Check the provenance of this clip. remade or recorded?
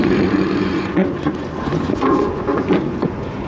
remade